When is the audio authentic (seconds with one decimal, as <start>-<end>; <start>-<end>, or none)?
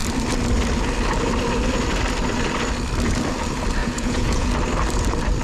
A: 0.0-3.8; 4.5-5.4